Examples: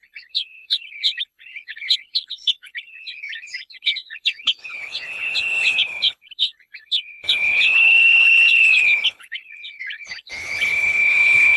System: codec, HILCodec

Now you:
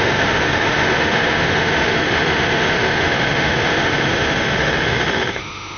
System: autoencoder, DAC-VAE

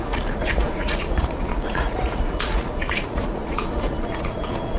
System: vocoder, Vocos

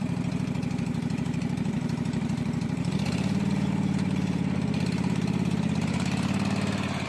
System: vocoder, BigVGAN v2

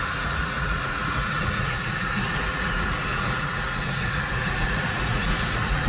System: vocoder, Vocos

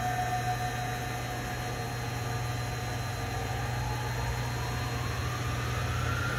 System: none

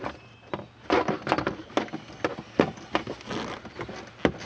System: none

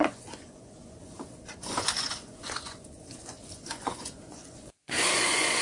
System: vocoder, Vocos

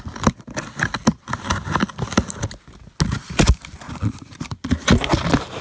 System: none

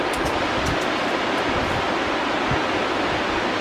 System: none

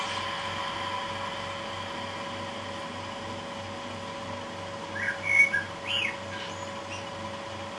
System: none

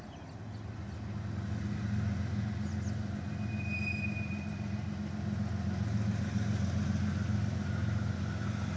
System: none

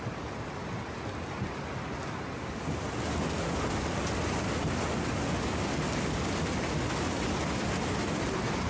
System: none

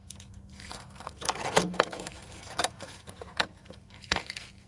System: codec, SNAC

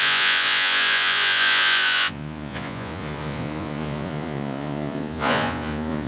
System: vocoder, Vocos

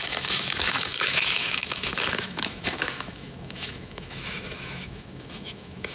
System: autoencoder, DAC-VAE